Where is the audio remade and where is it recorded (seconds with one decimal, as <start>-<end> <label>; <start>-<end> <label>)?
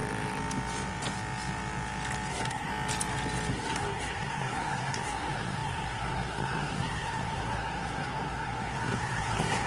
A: 0.0-2.3 recorded; 2.3-2.7 remade; 2.7-3.5 recorded; 3.5-9.7 remade